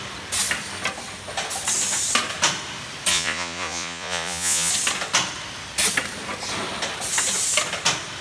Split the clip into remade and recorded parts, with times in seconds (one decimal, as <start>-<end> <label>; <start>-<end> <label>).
0.0-3.1 recorded; 3.1-4.7 remade; 4.7-8.2 recorded